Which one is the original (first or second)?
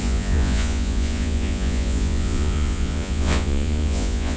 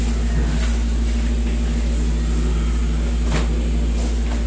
second